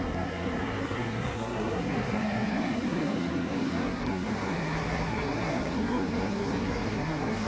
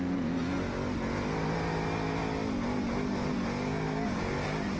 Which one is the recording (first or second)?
second